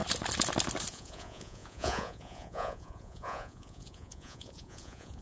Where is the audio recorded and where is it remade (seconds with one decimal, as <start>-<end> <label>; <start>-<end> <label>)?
0.0-0.9 recorded; 0.9-5.2 remade